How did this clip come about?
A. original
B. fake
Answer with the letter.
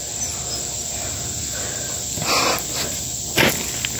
A